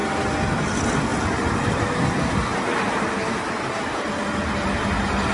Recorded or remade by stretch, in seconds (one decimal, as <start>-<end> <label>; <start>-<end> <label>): 0.0-2.5 recorded; 2.5-3.1 remade; 3.1-5.3 recorded